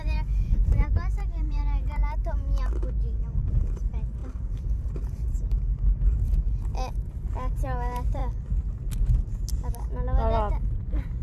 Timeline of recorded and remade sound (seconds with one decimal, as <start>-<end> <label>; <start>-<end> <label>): 0.0-6.3 remade; 6.3-7.3 recorded; 7.3-8.2 remade; 8.2-10.7 recorded; 10.7-11.2 remade